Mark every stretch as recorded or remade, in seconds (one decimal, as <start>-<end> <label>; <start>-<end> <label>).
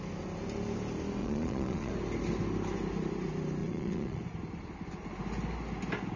0.0-1.2 recorded; 1.2-1.9 remade; 1.9-3.6 recorded; 3.6-4.2 remade; 4.2-6.2 recorded